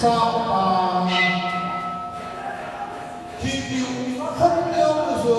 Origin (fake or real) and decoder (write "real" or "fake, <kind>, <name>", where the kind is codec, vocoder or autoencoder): fake, autoencoder, DAC-VAE